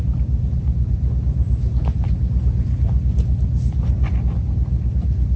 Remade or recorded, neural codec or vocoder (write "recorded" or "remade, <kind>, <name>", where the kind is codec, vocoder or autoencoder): recorded